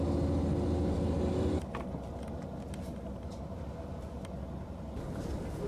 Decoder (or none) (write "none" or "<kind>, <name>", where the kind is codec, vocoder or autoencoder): none